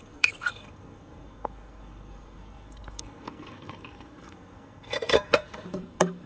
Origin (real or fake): fake